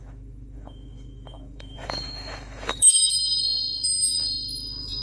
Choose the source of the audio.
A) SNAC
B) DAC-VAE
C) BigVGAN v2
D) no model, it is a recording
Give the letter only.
B